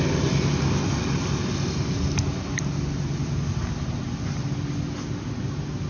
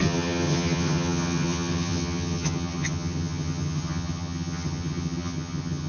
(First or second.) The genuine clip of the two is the first